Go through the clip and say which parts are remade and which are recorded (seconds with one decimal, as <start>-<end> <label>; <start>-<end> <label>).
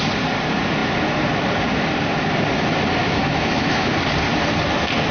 0.0-3.0 recorded; 3.0-3.9 remade; 3.9-5.1 recorded